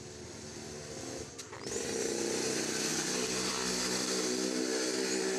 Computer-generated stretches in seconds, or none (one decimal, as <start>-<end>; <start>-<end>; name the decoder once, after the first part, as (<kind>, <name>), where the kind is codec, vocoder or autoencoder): none